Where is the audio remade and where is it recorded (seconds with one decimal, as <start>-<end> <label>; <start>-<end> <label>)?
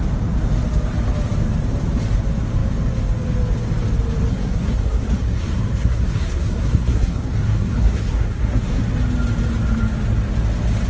0.0-4.3 recorded; 4.3-8.8 remade; 8.8-10.9 recorded